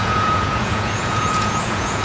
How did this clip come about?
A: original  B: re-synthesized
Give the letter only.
B